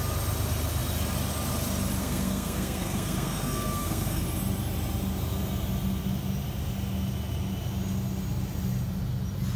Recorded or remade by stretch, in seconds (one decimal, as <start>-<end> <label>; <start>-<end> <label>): 0.0-2.0 recorded; 2.0-4.2 remade; 4.2-9.6 recorded